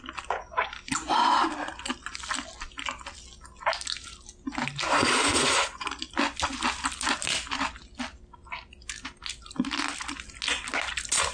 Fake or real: real